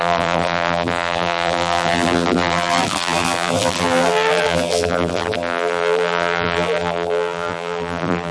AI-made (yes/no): yes